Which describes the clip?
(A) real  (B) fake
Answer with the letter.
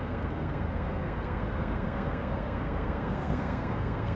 B